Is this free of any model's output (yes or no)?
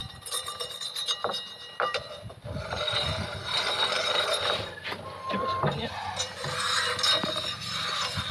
no